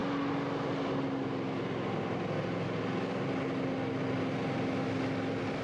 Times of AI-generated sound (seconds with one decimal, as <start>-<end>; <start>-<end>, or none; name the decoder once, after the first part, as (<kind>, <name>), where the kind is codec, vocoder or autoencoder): none